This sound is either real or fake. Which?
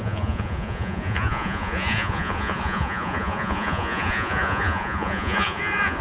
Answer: fake